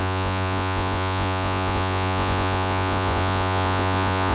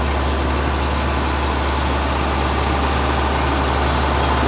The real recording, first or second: second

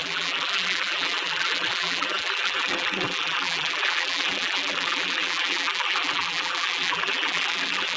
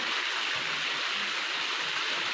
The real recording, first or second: second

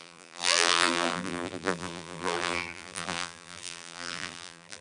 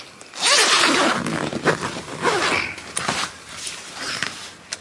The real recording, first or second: second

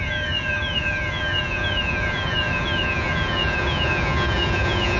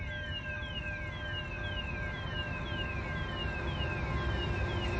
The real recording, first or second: second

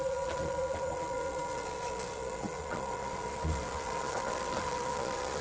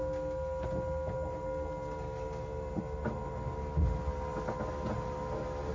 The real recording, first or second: second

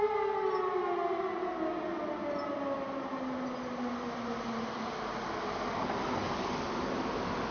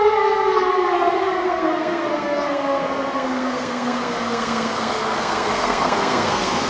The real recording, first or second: first